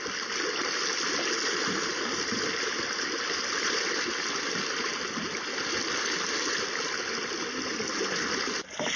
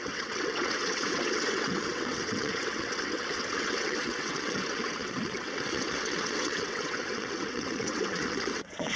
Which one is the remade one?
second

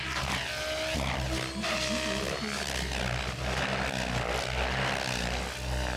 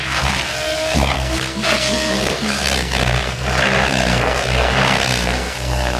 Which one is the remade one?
second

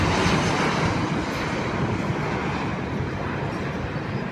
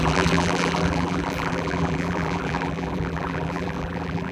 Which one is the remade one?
second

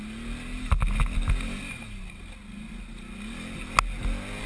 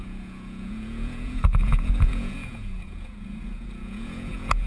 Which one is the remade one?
second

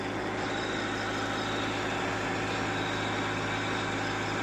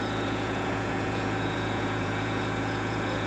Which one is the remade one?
second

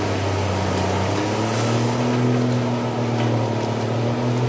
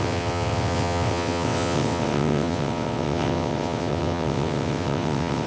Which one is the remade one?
second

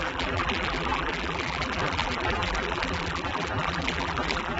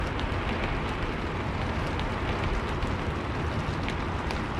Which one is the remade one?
first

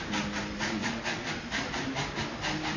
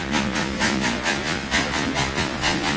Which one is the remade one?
second